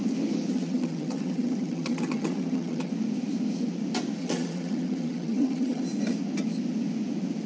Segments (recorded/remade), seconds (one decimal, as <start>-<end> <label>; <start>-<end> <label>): 0.0-0.5 recorded; 0.5-2.9 remade; 2.9-4.2 recorded; 4.2-5.8 remade; 5.8-7.5 recorded